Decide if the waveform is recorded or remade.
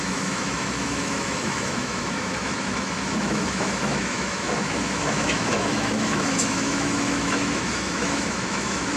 remade